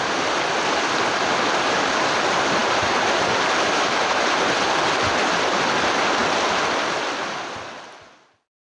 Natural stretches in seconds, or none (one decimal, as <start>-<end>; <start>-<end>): 0.0-8.6